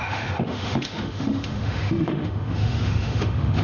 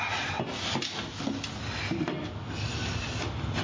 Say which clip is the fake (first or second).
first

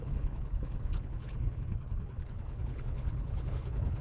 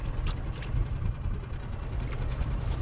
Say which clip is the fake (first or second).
first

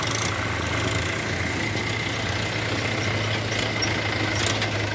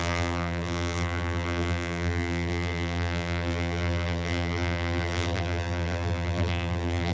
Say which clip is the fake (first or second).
second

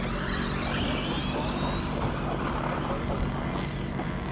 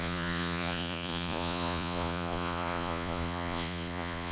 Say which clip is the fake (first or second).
second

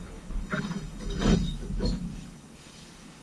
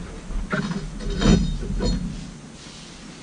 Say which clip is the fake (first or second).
first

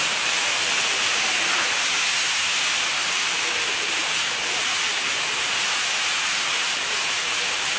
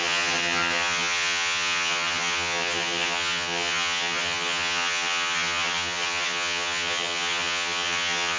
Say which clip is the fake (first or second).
second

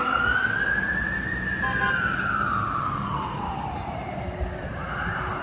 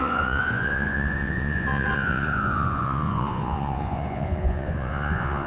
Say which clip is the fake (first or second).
second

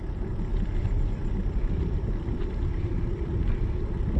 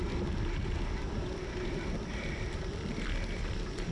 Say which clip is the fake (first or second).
first